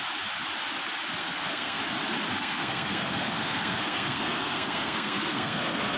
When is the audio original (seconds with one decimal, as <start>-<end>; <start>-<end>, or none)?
0.0-1.2; 1.8-2.3